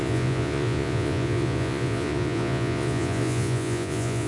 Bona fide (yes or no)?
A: no